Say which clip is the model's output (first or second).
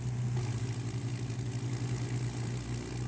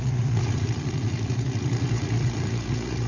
second